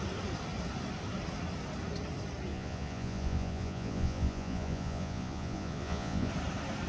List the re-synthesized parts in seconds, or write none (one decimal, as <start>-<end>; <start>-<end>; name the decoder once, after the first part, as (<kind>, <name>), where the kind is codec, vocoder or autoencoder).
2.5-6.3 (vocoder, Vocos)